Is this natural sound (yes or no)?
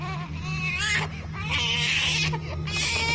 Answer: no